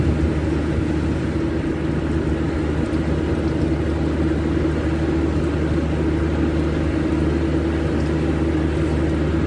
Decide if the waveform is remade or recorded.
recorded